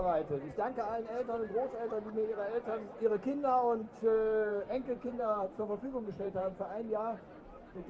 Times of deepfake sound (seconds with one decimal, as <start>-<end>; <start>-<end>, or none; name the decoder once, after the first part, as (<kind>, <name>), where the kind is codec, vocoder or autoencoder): 4.5-6.6 (vocoder, BigVGAN v2)